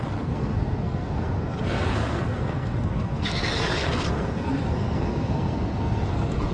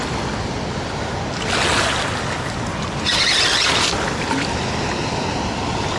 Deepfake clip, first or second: first